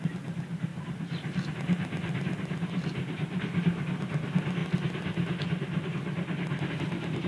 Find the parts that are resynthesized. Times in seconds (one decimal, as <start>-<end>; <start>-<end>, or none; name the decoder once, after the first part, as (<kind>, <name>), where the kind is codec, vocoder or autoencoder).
none